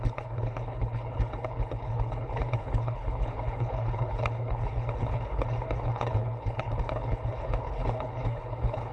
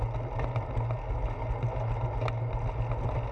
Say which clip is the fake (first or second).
first